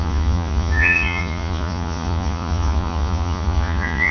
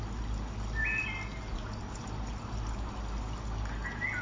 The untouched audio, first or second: second